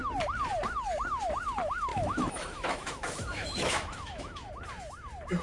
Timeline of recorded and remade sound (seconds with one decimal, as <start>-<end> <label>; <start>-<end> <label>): 0.0-1.9 recorded; 1.9-4.5 remade; 4.5-5.4 recorded